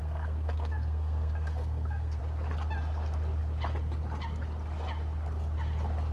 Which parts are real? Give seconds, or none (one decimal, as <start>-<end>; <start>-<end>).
2.2-6.1